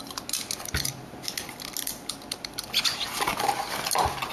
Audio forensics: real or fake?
real